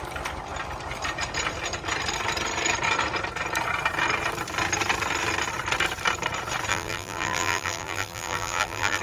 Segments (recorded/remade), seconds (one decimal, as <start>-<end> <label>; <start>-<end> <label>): 0.0-6.7 recorded; 6.7-9.0 remade